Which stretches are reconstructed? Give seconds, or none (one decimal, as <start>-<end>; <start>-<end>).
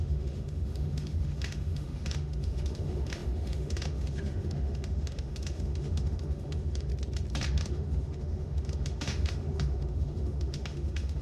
0.0-6.9; 7.5-11.2